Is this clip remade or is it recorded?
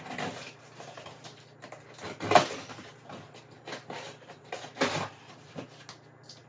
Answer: recorded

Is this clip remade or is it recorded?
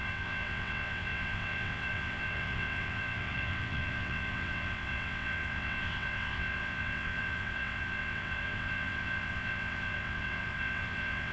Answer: remade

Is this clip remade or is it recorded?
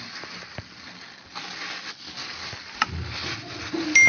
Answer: recorded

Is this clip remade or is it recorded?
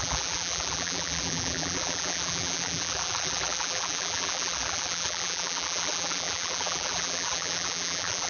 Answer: remade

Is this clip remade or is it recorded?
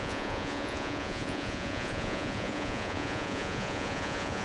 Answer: remade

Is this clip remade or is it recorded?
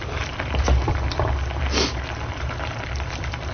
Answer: remade